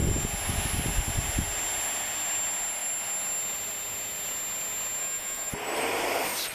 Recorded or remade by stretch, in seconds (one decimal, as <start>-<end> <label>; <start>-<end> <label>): 0.0-5.0 recorded; 5.0-5.5 remade; 5.5-6.5 recorded